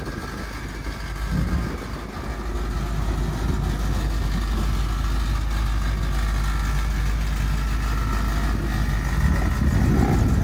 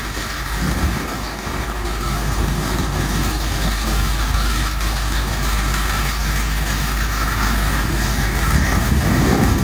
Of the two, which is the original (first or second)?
first